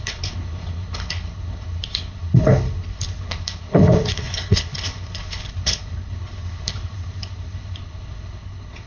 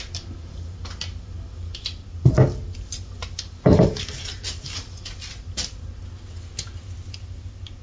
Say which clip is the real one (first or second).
second